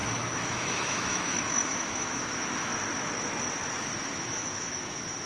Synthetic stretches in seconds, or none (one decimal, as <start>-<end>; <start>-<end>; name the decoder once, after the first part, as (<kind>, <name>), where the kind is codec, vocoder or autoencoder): 0.0-2.7 (autoencoder, DAC-VAE); 4.0-5.3